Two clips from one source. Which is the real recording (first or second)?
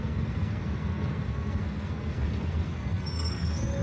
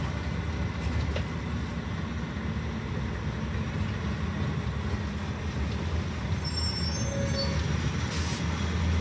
second